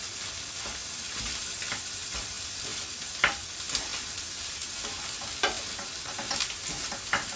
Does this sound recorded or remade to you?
recorded